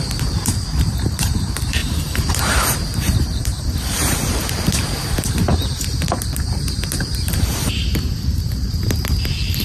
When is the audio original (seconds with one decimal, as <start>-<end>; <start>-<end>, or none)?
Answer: none